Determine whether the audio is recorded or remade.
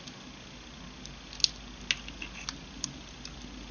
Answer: recorded